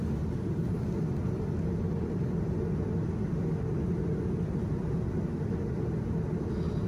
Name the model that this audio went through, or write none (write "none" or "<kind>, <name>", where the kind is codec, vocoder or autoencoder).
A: none